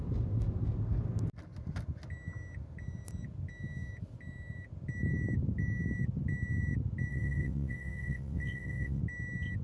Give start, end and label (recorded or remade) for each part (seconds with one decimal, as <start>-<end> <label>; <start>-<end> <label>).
0.0-7.1 recorded; 7.1-9.0 remade; 9.0-9.6 recorded